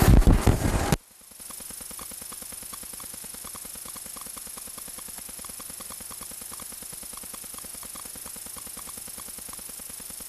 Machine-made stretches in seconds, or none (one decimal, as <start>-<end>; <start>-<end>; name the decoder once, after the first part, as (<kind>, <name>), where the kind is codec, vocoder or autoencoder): none